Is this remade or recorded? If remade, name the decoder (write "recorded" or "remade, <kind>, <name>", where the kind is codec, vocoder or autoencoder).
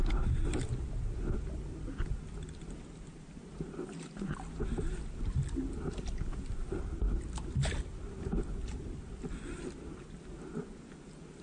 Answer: recorded